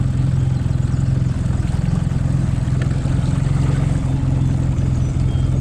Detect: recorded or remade recorded